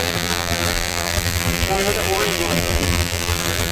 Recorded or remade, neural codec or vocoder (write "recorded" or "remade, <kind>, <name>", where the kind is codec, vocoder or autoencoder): remade, vocoder, BigVGAN v2